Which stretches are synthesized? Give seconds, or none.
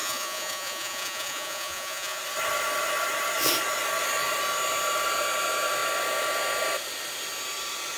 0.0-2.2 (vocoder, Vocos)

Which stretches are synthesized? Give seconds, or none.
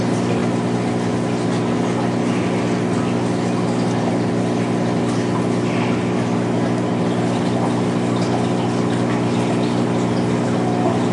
none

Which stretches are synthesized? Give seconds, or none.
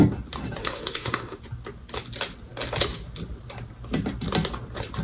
0.6-1.4 (autoencoder, DAC-VAE)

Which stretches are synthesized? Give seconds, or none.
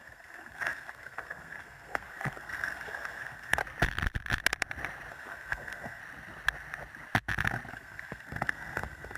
0.0-3.6 (codec, SNAC); 5.1-6.0; 7.7-9.2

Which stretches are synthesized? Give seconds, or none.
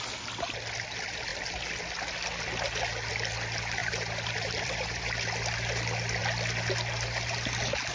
3.8-4.9 (vocoder, BigVGAN v2)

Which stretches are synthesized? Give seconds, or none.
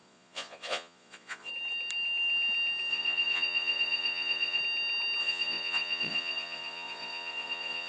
0.0-1.5 (vocoder, Vocos); 2.9-4.6; 5.2-7.9